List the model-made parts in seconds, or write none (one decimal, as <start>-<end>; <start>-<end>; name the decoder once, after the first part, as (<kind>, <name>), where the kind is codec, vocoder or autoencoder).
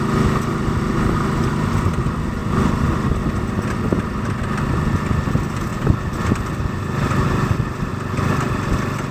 2.4-3.2 (vocoder, BigVGAN v2); 5.7-7.9